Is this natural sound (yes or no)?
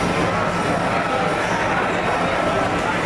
yes